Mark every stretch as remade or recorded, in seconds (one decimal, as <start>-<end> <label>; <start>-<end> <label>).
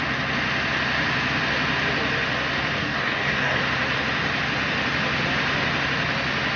0.0-2.8 recorded; 2.8-3.6 remade; 3.6-6.6 recorded